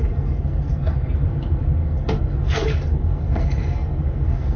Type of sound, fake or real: fake